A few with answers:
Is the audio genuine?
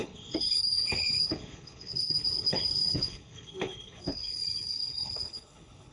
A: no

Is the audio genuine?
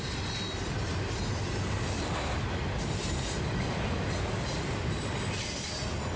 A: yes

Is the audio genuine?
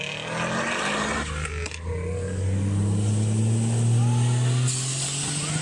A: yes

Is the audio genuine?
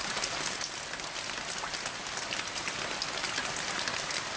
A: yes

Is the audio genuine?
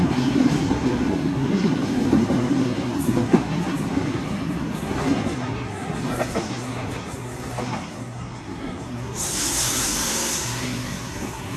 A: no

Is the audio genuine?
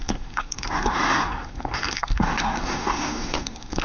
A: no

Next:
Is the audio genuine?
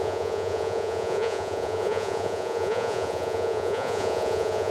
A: no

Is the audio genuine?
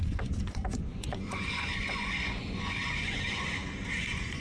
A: no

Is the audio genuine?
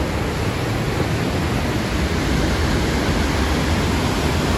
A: yes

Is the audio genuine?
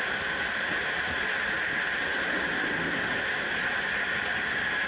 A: yes